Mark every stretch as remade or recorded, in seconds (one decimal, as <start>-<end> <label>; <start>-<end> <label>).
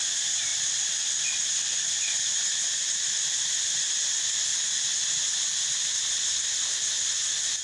0.0-7.6 recorded